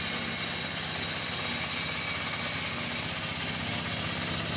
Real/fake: real